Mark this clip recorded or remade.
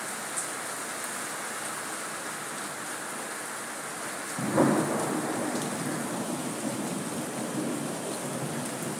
recorded